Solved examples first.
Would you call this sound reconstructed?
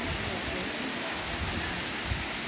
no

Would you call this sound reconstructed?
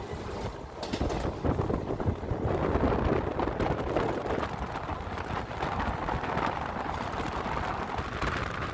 no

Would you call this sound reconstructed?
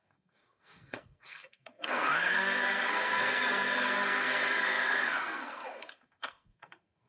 yes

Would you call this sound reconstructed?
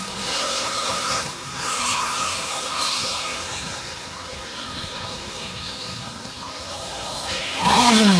yes